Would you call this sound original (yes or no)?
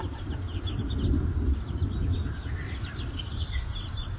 yes